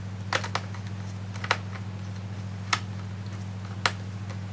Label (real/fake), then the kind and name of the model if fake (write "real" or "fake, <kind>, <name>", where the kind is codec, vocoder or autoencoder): real